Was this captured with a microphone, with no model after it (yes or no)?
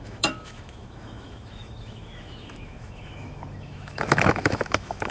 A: no